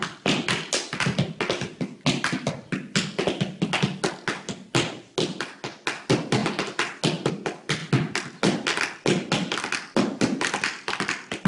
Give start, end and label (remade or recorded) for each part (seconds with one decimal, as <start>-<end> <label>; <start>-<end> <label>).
0.0-11.5 recorded